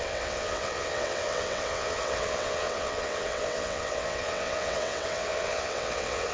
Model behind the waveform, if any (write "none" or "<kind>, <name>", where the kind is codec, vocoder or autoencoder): vocoder, WaveNeXt